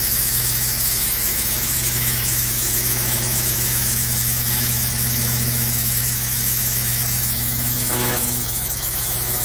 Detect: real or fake fake